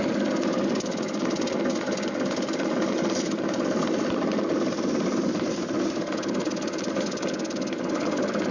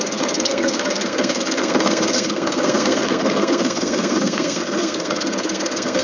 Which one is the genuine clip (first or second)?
first